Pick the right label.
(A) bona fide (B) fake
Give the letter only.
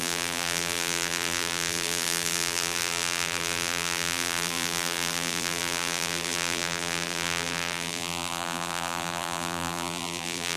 B